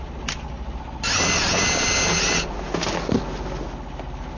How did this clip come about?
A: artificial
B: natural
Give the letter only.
B